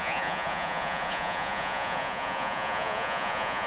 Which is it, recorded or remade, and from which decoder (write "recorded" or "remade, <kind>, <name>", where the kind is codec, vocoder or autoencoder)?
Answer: remade, vocoder, Vocos